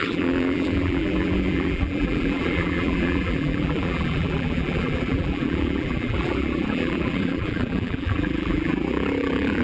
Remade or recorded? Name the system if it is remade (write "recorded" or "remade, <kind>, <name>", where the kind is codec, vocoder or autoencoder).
remade, vocoder, BigVGAN v2